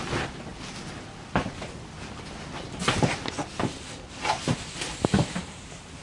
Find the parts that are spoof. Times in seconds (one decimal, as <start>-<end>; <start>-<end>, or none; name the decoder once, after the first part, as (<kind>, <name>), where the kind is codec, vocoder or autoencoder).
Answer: none